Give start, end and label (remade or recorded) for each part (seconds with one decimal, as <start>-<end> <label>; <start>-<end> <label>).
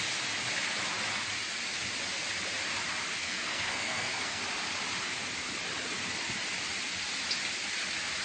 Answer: 0.0-3.2 recorded; 3.2-4.4 remade; 4.4-8.2 recorded